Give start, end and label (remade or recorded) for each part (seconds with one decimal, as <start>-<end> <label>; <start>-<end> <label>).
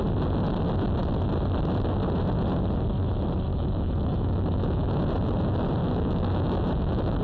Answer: 0.0-3.5 recorded; 3.5-5.0 remade; 5.0-5.8 recorded; 5.8-7.2 remade